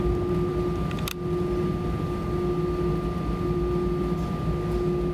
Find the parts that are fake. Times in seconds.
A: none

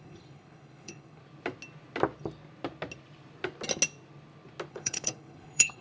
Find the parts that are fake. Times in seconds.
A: 0.0-1.2 (codec, HILCodec); 4.7-5.8